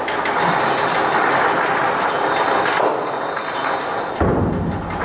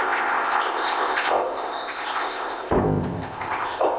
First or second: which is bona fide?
first